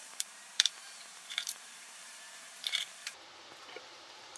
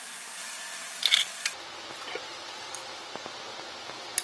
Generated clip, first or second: first